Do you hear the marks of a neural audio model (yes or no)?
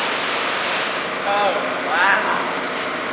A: no